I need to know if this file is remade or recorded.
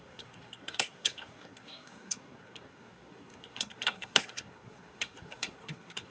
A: remade